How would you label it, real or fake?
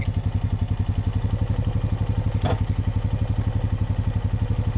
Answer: real